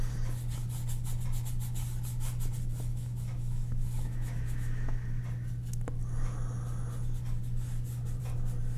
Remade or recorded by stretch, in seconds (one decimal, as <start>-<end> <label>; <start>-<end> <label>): 0.0-2.9 recorded; 2.9-5.2 remade; 5.2-8.8 recorded